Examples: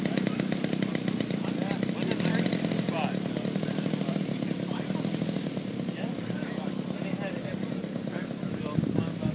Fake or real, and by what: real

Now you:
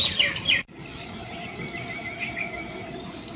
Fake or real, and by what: real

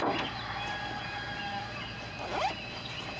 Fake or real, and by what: real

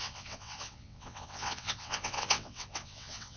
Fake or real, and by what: fake, vocoder, WaveNeXt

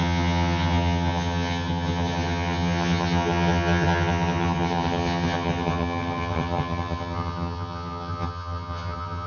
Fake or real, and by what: fake, vocoder, HiFi-GAN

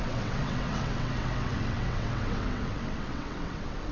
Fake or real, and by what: fake, vocoder, WaveNeXt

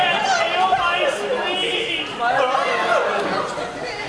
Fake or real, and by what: real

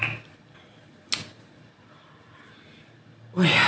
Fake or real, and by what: real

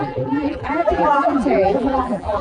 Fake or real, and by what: fake, vocoder, BigVGAN v2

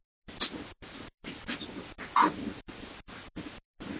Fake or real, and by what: real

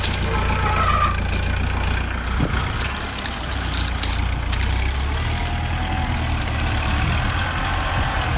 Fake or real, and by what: real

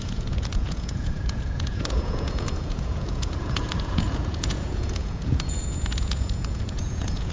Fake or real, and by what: fake, vocoder, Vocos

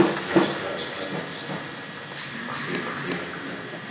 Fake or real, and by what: real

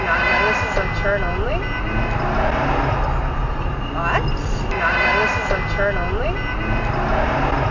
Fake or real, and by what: real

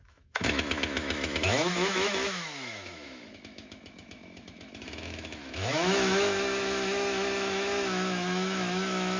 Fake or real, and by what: fake, autoencoder, DAC-VAE